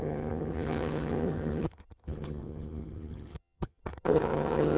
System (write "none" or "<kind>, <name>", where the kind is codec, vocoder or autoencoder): vocoder, HiFi-GAN